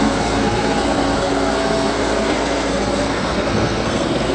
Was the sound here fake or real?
fake